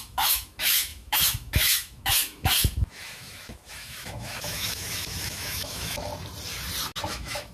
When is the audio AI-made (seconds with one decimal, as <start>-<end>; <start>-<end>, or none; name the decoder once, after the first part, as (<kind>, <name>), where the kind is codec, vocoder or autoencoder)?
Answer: 0.0-6.1 (autoencoder, DAC-VAE); 7.1-7.5